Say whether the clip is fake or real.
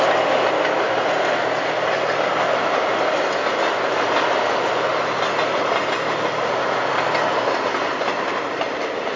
real